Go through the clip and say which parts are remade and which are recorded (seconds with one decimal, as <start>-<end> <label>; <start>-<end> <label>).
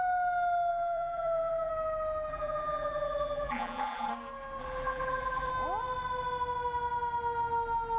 0.0-0.7 recorded; 0.7-1.7 remade; 1.7-2.3 recorded; 2.3-4.1 remade; 4.1-4.6 recorded; 4.6-5.5 remade; 5.5-8.0 recorded